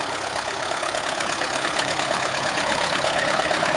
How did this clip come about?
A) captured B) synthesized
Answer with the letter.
B